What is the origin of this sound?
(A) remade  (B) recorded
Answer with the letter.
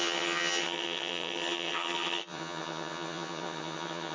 A